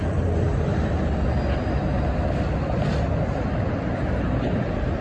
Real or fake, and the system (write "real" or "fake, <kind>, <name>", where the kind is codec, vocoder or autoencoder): real